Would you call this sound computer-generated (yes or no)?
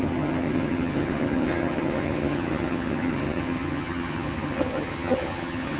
yes